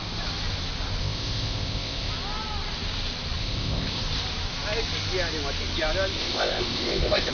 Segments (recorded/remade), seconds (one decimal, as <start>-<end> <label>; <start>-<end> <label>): 0.0-1.0 recorded; 1.0-2.1 remade; 2.1-3.4 recorded; 3.4-4.0 remade; 4.0-6.2 recorded; 6.2-7.3 remade